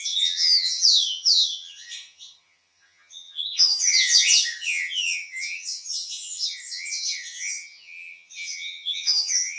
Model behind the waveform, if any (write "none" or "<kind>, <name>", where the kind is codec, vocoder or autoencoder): vocoder, HiFi-GAN